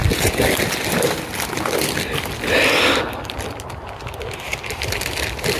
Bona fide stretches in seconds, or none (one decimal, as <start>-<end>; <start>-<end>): 0.0-5.6